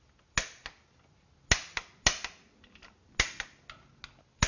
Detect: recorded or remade recorded